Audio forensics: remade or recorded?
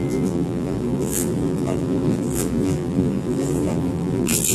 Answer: remade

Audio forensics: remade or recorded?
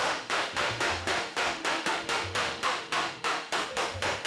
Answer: remade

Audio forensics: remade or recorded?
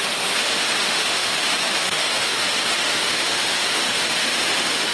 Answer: remade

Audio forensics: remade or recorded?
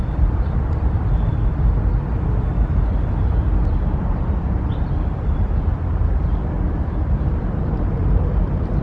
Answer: remade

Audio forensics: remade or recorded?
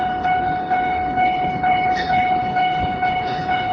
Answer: remade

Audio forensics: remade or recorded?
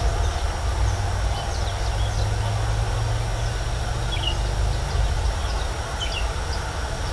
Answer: recorded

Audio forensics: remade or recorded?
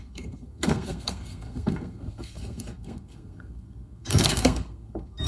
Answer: remade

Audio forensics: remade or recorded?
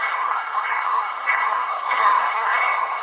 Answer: remade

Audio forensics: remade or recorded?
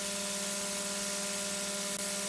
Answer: recorded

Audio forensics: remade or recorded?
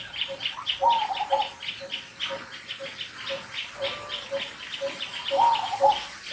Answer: recorded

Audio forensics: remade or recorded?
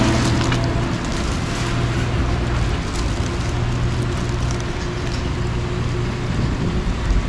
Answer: recorded